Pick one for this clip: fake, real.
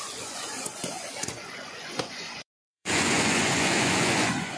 fake